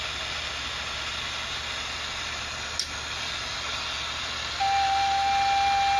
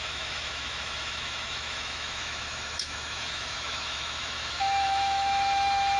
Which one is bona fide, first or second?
first